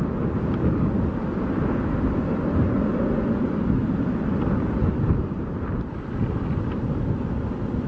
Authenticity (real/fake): real